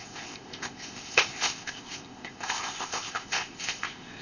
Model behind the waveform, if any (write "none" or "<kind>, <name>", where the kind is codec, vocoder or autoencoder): codec, ZipCodec